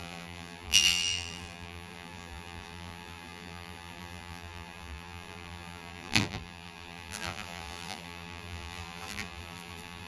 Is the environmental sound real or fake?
fake